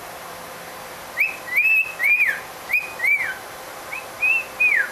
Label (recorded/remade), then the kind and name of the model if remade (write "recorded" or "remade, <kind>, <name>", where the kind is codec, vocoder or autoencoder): recorded